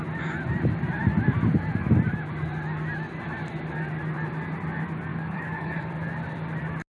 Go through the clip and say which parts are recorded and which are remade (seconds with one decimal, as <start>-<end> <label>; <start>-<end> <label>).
0.0-5.1 recorded; 5.1-5.9 remade; 5.9-6.9 recorded